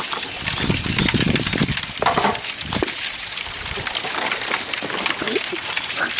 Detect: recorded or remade recorded